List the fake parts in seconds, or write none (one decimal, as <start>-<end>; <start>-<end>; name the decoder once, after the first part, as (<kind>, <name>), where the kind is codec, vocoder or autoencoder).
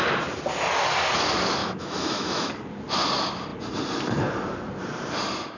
1.6-2.5 (autoencoder, DAC-VAE)